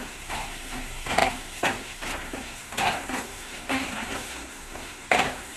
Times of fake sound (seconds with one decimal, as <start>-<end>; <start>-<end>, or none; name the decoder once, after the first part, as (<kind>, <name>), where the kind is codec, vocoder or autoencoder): 0.0-5.6 (codec, SNAC)